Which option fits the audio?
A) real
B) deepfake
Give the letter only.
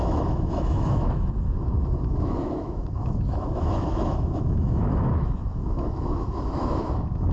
B